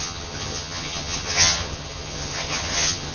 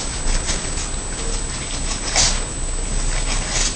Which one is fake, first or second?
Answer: first